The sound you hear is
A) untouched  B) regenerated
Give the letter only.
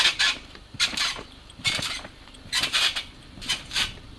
B